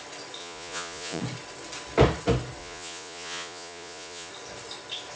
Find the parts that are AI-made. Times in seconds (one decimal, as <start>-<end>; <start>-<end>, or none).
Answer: 0.4-1.2; 2.6-4.3

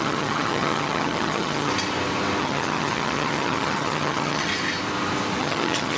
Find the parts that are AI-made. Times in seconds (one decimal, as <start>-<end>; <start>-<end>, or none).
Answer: 0.0-1.7; 2.4-4.5; 5.4-6.0

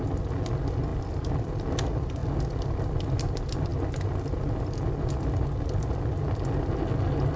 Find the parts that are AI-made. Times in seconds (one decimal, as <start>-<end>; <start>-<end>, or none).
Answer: none